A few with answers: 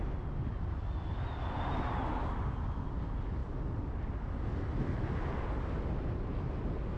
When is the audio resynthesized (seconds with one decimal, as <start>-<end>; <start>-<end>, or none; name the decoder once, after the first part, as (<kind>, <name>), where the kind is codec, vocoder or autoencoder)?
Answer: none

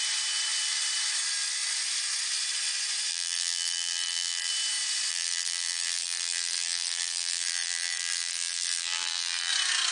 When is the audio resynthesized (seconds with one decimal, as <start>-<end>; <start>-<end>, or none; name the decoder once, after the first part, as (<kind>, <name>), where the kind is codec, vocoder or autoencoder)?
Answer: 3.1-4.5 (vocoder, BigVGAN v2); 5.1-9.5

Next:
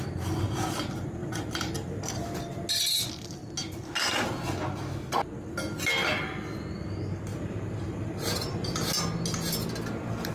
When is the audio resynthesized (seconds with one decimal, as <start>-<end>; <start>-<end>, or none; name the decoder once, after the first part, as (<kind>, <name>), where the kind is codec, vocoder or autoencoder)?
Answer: 1.2-2.4 (vocoder, BigVGAN v2); 7.3-8.8

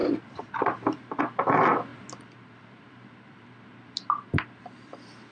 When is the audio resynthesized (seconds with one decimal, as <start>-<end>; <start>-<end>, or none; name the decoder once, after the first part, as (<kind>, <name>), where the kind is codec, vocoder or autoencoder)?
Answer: 0.0-1.2 (vocoder, BigVGAN v2); 1.9-5.3

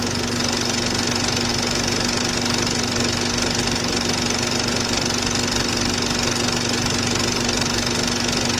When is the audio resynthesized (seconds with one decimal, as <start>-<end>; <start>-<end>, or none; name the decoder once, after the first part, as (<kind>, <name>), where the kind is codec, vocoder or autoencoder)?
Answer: none

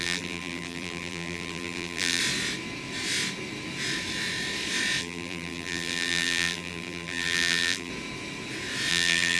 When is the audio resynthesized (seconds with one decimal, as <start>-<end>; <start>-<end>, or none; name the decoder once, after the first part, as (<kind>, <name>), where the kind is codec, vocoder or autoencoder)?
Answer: 0.0-2.2 (vocoder, BigVGAN v2); 5.0-7.9; 8.9-9.4

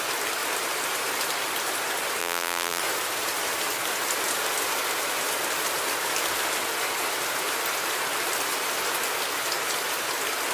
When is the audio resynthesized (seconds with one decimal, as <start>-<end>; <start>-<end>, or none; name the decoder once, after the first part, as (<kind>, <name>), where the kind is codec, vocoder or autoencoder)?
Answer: 2.2-2.8 (vocoder, BigVGAN v2)

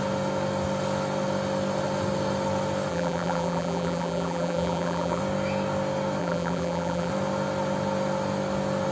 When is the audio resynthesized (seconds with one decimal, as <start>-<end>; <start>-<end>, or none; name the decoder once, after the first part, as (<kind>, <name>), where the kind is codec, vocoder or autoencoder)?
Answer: 2.9-5.2 (vocoder, BigVGAN v2); 6.2-7.1